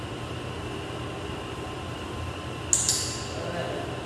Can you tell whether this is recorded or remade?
recorded